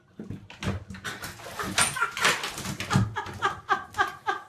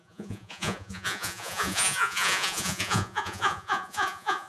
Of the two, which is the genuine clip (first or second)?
first